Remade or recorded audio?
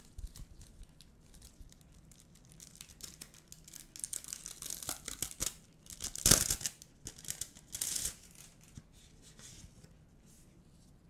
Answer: recorded